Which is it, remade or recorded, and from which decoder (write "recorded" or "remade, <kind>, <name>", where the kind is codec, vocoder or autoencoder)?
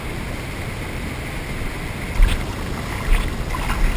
recorded